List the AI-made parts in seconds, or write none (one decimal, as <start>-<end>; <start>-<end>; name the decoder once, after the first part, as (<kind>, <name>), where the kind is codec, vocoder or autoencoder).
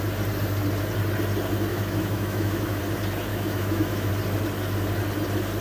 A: 1.7-2.8 (autoencoder, DAC-VAE); 3.3-4.1